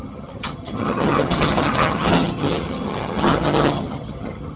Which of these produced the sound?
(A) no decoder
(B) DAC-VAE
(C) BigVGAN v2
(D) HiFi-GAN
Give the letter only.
D